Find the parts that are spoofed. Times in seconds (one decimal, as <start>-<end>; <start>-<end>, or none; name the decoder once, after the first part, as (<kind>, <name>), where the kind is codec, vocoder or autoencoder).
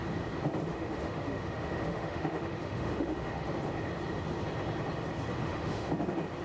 0.7-3.5 (autoencoder, DAC-VAE); 5.4-5.9